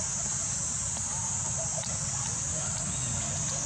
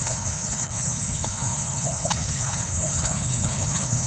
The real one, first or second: first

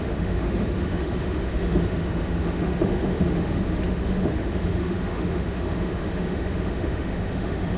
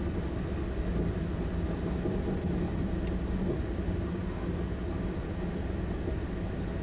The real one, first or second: second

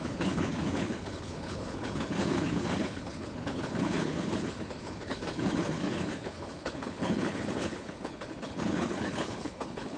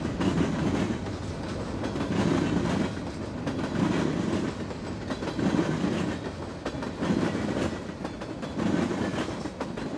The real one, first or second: second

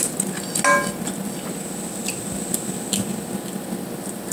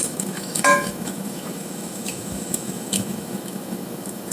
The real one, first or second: first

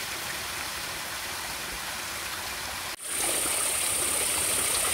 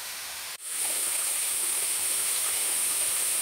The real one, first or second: first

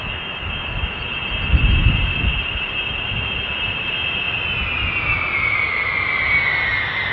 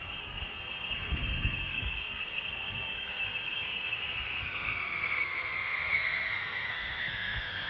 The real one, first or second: first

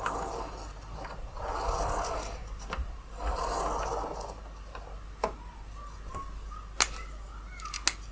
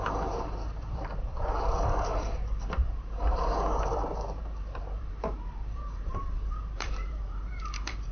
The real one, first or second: first